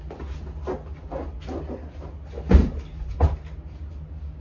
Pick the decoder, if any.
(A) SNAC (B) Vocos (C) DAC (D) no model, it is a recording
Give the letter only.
D